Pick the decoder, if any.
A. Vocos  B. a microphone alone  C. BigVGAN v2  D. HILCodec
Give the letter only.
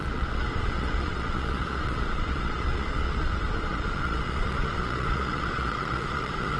A